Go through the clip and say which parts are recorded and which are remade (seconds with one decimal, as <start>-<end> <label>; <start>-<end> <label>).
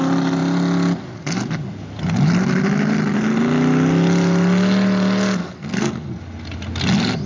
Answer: 0.0-5.4 recorded; 5.4-6.2 remade; 6.2-7.3 recorded